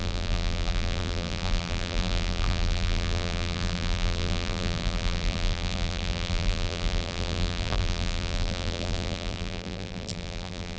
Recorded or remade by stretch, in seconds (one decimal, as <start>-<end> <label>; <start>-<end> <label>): 0.0-10.8 remade